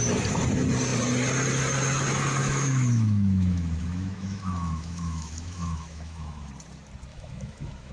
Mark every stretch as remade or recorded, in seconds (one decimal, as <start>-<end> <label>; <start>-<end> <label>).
0.0-2.4 recorded; 2.4-6.5 remade; 6.5-7.1 recorded; 7.1-7.9 remade